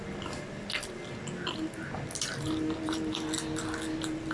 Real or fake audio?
real